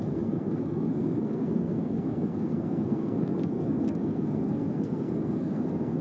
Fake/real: fake